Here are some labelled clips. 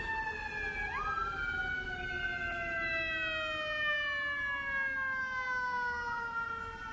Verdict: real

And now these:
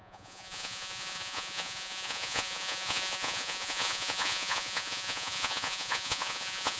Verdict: fake